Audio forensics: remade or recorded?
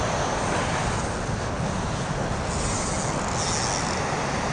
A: recorded